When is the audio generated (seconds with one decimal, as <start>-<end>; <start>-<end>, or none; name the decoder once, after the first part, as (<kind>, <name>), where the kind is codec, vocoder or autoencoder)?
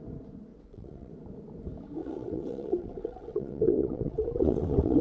0.5-1.1 (vocoder, WaveNeXt); 2.0-5.0